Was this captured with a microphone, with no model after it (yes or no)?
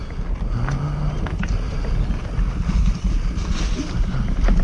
yes